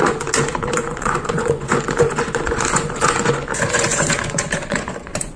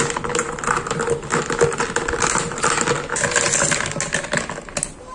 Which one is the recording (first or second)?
second